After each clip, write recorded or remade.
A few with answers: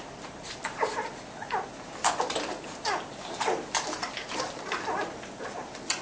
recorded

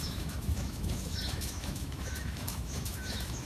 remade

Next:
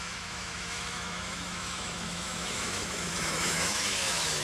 remade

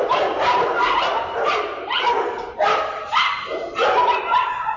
recorded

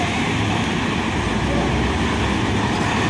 recorded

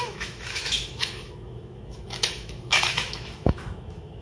remade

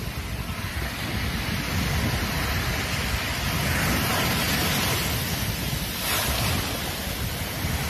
recorded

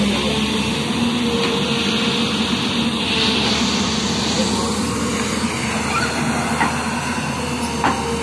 recorded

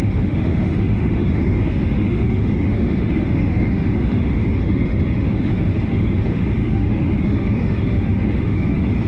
remade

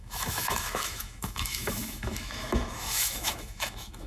remade